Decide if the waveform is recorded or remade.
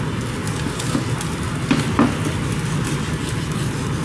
recorded